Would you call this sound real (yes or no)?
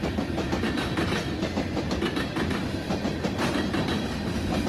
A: yes